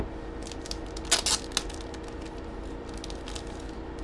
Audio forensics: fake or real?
real